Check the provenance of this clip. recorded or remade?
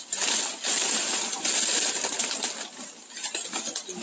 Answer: recorded